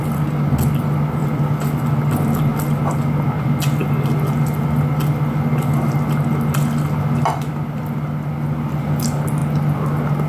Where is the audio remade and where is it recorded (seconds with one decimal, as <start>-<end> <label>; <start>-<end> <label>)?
0.0-10.3 recorded